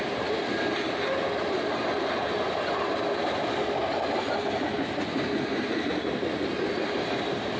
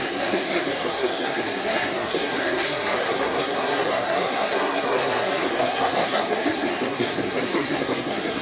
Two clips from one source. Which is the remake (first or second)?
second